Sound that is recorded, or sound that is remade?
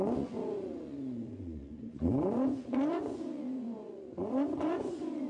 remade